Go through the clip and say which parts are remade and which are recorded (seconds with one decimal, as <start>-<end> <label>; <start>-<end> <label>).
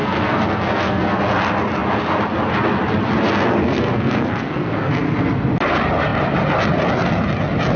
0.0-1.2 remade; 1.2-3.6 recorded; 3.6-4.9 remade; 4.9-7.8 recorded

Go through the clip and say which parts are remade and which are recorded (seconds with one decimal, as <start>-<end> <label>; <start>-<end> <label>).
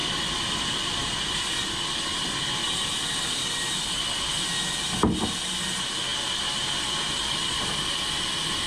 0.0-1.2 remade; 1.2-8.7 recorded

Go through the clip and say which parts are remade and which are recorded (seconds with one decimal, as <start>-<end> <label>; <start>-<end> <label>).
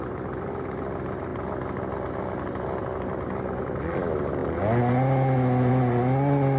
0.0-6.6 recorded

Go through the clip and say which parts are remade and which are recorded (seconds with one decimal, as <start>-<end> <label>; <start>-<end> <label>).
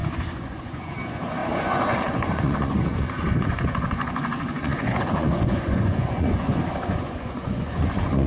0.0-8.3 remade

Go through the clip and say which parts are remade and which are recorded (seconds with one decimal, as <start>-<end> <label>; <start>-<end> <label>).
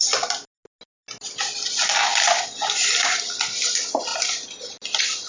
0.0-5.3 recorded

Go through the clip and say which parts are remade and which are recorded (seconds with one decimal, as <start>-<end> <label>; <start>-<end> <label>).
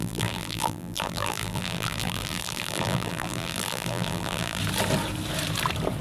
0.0-4.6 remade; 4.6-6.0 recorded